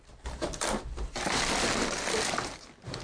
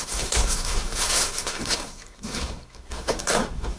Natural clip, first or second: first